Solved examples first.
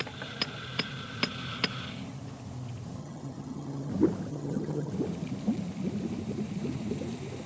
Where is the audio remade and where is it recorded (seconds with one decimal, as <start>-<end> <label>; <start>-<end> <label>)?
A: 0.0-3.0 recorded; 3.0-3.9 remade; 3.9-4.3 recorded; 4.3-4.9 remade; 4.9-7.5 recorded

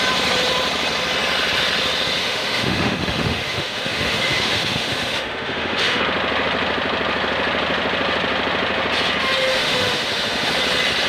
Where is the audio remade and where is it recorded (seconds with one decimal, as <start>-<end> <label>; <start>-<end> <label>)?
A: 0.0-2.2 recorded; 2.2-6.0 remade; 6.0-9.5 recorded; 9.5-10.5 remade; 10.5-11.1 recorded

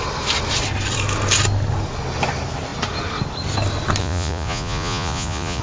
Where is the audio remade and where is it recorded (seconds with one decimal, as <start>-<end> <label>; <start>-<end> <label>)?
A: 0.0-4.0 recorded; 4.0-5.6 remade

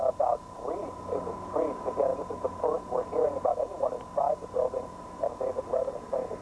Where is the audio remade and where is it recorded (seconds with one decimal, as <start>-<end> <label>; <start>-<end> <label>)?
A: 0.0-6.4 recorded

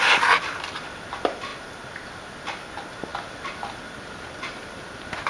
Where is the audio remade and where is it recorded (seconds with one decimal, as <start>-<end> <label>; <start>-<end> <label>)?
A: 0.0-5.3 recorded

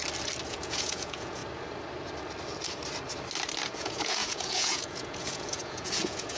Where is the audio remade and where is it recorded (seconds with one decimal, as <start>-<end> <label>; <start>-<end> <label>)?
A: 0.0-0.5 recorded; 0.5-1.4 remade; 1.4-3.7 recorded; 3.7-6.4 remade

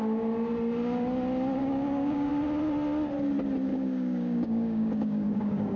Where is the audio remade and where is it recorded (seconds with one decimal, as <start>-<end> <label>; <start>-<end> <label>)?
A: 0.0-1.6 recorded; 1.6-2.3 remade; 2.3-3.7 recorded; 3.7-5.8 remade

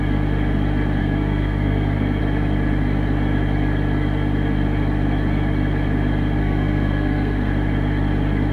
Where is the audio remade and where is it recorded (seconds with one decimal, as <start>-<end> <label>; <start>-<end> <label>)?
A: 0.0-1.0 recorded; 1.0-2.2 remade; 2.2-6.4 recorded; 6.4-7.5 remade; 7.5-8.5 recorded